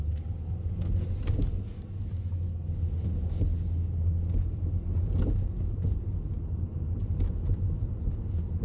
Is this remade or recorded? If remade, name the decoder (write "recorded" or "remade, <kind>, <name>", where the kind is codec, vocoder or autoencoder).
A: recorded